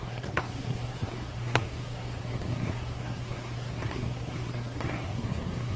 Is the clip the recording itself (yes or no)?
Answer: no